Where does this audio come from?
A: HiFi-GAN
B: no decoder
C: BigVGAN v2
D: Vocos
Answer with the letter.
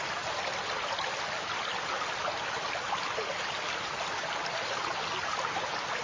B